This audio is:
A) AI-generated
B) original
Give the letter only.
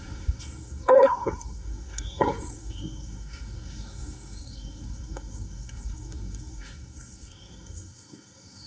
A